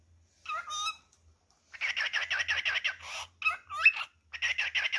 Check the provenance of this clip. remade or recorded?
recorded